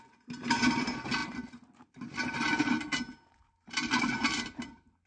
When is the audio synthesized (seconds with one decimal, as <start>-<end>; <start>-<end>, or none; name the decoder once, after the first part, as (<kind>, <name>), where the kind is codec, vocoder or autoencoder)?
none